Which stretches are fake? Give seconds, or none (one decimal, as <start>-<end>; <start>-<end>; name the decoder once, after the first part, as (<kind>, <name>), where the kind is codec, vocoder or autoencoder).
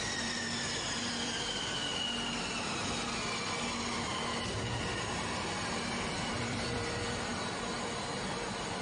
0.0-1.9 (vocoder, BigVGAN v2); 6.3-8.8